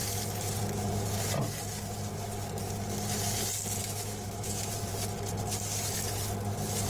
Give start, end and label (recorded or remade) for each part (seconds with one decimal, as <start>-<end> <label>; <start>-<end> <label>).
0.0-3.8 recorded; 3.8-4.7 remade; 4.7-6.9 recorded